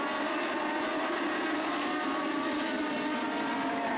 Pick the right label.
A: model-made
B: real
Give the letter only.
A